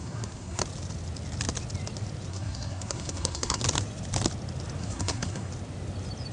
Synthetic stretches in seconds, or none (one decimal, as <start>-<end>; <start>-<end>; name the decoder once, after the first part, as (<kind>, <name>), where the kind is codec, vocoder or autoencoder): 0.0-0.6 (codec, SNAC); 2.3-3.6; 4.8-5.5